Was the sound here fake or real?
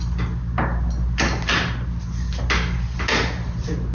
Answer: real